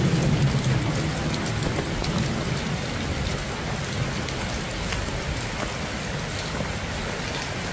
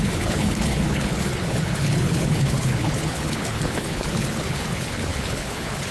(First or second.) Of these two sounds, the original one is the first